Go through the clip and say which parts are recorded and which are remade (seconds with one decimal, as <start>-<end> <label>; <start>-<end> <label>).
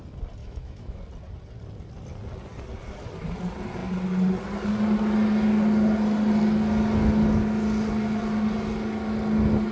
0.0-0.4 recorded; 0.4-1.0 remade; 1.0-9.7 recorded